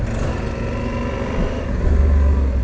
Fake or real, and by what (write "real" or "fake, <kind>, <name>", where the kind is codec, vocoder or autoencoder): real